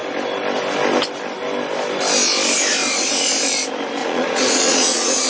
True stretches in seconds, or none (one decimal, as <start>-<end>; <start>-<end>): 0.0-4.0